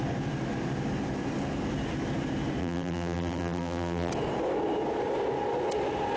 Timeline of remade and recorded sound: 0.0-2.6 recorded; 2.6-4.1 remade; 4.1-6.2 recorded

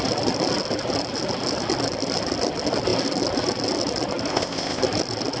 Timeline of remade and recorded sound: 0.0-4.3 recorded; 4.3-4.8 remade; 4.8-5.4 recorded

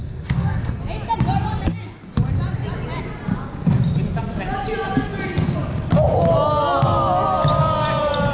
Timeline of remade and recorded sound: 0.0-0.8 remade; 0.8-8.3 recorded

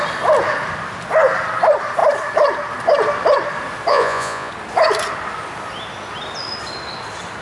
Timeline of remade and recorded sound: 0.0-3.9 recorded; 3.9-4.5 remade; 4.5-7.4 recorded

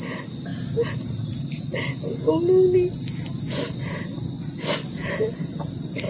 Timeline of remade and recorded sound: 0.0-0.5 recorded; 0.5-1.6 remade; 1.6-5.0 recorded; 5.0-6.1 remade

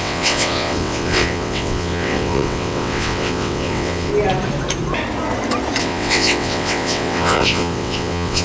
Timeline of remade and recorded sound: 0.0-4.1 remade; 4.1-5.8 recorded; 5.8-8.4 remade

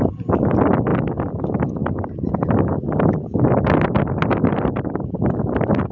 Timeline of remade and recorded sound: 0.0-5.9 recorded